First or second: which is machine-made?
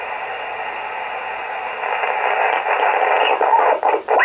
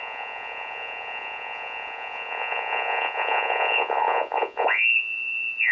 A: second